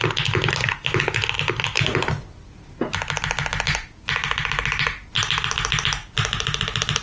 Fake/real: real